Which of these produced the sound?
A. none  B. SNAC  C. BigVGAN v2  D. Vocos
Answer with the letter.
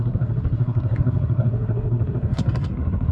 B